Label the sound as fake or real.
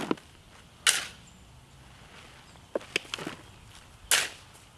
real